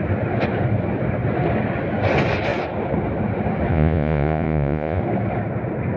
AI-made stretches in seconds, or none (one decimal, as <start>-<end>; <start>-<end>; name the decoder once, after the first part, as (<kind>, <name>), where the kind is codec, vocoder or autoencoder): 3.7-5.0 (vocoder, Vocos)